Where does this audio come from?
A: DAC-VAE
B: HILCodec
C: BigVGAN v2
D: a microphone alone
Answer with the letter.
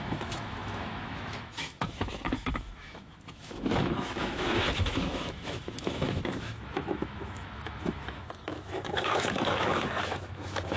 A